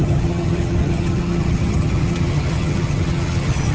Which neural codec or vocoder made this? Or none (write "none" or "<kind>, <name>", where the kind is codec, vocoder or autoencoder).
vocoder, HiFi-GAN